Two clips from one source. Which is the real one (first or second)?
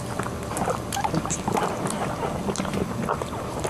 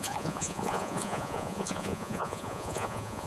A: first